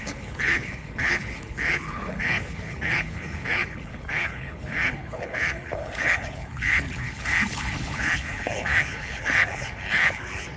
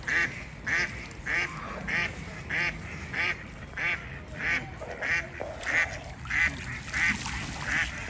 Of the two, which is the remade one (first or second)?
first